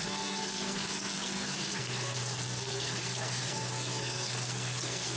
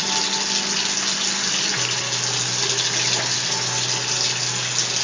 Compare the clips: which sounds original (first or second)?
second